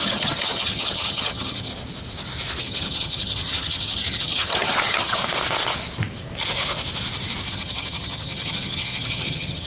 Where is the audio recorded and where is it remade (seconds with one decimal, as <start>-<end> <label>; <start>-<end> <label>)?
0.0-1.7 remade; 1.7-2.6 recorded; 2.6-5.2 remade; 5.2-7.5 recorded; 7.5-9.7 remade